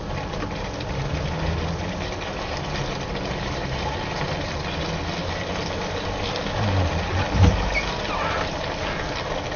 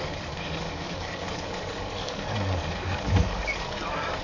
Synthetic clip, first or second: second